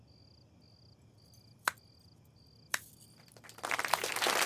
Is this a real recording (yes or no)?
yes